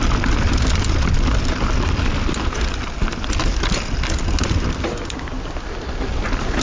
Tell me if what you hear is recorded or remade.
recorded